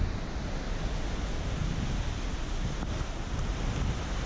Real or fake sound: real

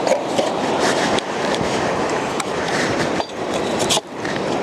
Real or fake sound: fake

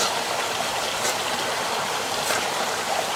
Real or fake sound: fake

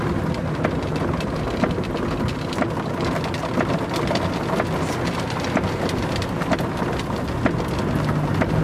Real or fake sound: real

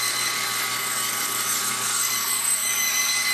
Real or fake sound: fake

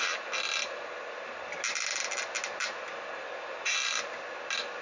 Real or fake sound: real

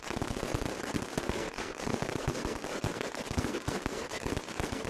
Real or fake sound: fake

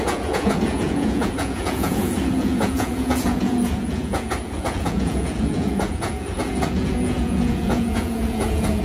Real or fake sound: fake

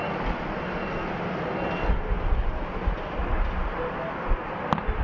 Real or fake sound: real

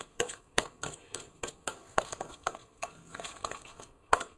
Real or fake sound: fake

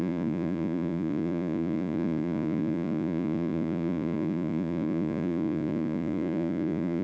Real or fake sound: fake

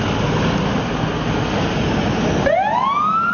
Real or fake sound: real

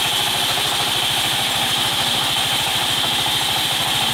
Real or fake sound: real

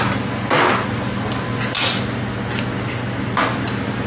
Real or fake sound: real